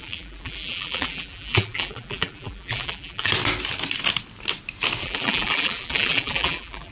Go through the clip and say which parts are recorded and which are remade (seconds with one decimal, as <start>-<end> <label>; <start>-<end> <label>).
0.0-3.3 remade; 3.3-5.0 recorded; 5.0-6.9 remade